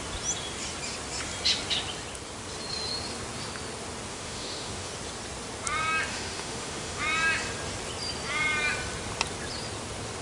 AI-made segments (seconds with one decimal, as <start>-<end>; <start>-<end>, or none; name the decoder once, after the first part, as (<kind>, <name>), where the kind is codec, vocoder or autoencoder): 4.1-4.9 (autoencoder, DAC-VAE); 6.1-7.0